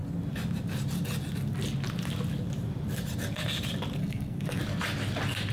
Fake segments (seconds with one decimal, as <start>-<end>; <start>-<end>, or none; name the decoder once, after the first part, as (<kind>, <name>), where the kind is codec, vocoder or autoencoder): 4.0-4.6 (codec, SNAC)